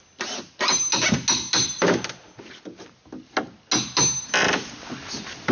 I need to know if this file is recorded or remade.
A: recorded